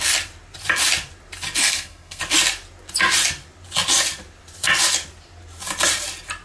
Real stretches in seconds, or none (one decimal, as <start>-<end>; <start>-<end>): 0.0-1.6; 2.2-6.4